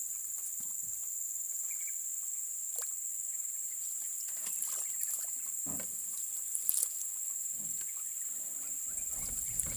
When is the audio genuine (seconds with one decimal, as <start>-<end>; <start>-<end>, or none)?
0.0-9.8